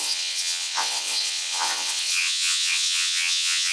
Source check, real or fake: fake